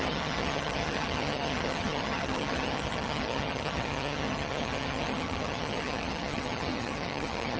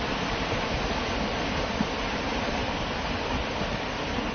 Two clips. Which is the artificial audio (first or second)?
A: first